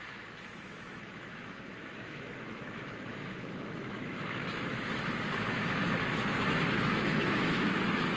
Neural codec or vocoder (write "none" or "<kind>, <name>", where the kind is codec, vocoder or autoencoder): autoencoder, DAC-VAE